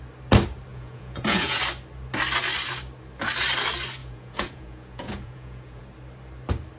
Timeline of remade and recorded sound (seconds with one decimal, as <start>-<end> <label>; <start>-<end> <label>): 0.0-0.7 recorded; 0.7-1.6 remade; 1.6-4.0 recorded; 4.0-5.8 remade; 5.8-6.8 recorded